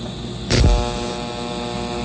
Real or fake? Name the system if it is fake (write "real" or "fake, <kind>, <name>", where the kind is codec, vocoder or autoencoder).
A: real